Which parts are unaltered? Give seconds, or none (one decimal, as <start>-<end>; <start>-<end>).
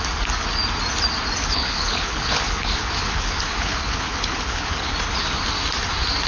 0.0-1.4; 4.9-6.3